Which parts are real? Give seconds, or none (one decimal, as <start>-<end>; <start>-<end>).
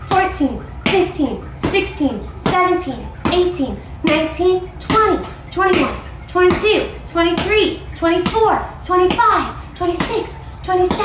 0.0-11.0